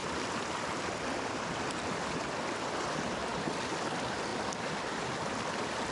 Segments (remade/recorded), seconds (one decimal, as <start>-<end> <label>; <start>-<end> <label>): 0.0-3.4 remade; 3.4-4.3 recorded; 4.3-5.9 remade